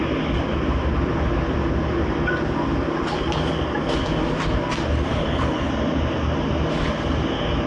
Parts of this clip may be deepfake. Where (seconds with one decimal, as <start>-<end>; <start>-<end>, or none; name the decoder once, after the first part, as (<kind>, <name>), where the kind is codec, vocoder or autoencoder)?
5.1-5.7 (codec, HILCodec)